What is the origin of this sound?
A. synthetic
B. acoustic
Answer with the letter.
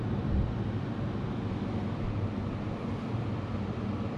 B